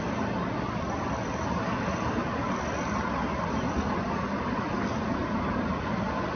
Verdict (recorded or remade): recorded